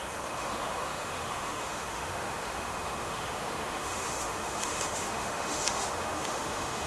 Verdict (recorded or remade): remade